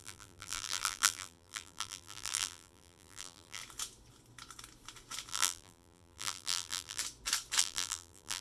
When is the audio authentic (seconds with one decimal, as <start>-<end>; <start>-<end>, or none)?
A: 3.6-5.3; 7.0-7.6